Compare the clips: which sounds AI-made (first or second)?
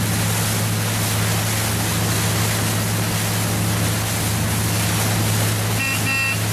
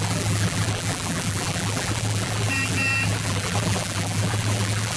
second